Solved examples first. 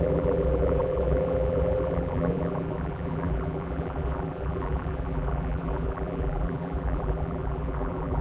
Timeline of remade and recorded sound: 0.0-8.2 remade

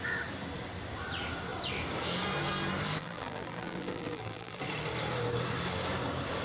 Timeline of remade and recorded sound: 0.0-3.0 recorded; 3.0-4.6 remade; 4.6-6.4 recorded

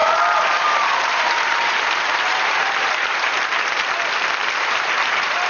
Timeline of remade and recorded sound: 0.0-3.3 remade; 3.3-4.4 recorded; 4.4-5.5 remade

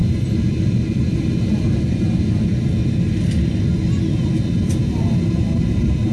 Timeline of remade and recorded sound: 0.0-1.1 recorded; 1.1-2.7 remade; 2.7-4.9 recorded; 4.9-6.1 remade